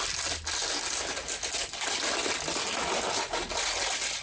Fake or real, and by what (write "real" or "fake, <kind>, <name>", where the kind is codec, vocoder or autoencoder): real